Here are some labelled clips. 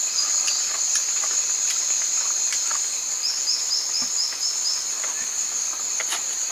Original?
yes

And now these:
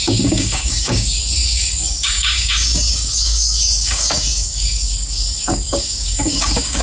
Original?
no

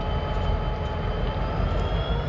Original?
yes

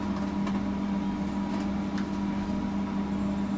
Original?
yes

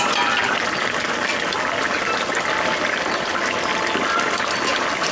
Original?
yes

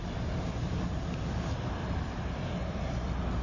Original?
yes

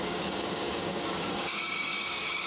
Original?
no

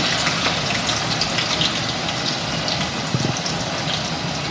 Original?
yes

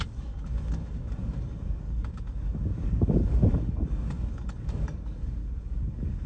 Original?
no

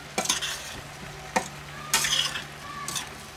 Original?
yes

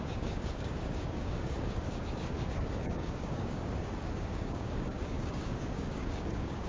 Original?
no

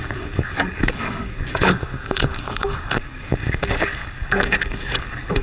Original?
no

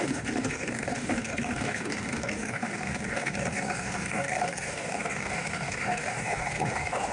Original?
no